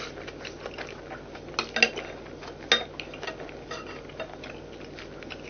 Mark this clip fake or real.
real